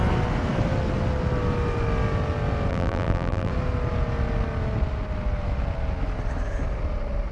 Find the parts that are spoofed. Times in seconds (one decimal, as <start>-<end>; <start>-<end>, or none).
2.7-3.5